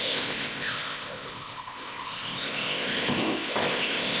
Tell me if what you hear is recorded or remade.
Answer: remade